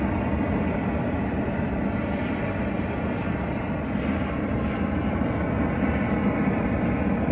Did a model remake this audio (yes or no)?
no